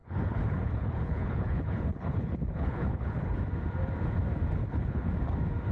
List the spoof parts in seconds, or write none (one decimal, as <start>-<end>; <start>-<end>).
0.0-3.4; 4.6-5.1